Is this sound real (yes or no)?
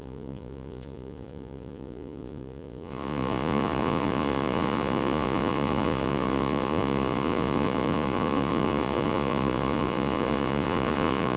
no